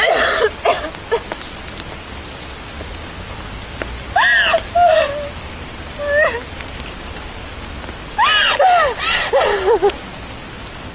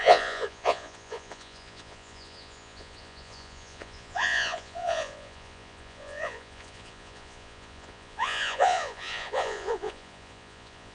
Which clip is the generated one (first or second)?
second